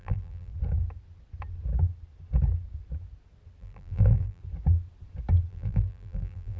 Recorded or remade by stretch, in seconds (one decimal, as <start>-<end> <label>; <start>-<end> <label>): 0.0-0.5 remade; 0.5-3.6 recorded; 3.6-4.4 remade; 4.4-5.5 recorded; 5.5-6.6 remade